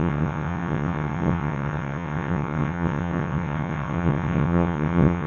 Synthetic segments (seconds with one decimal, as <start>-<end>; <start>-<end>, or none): 0.0-5.3

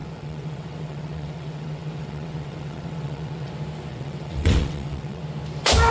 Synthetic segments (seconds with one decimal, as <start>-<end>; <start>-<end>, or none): 0.0-3.5; 3.9-5.2

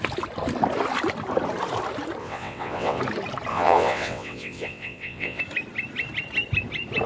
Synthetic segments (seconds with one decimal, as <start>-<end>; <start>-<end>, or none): 2.2-3.0; 3.5-5.4

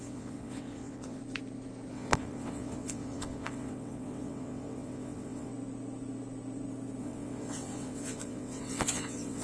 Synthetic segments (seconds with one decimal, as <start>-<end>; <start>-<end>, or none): 0.0-1.2; 1.9-5.5; 7.0-9.4